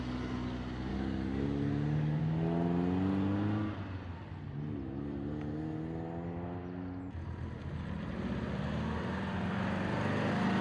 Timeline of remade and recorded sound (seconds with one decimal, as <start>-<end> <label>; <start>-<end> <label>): 0.0-0.9 recorded; 0.9-2.2 remade; 2.2-10.6 recorded